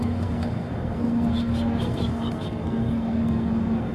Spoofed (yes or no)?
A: yes